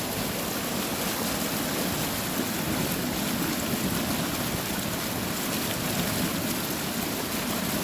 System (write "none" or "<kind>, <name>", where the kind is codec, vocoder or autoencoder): none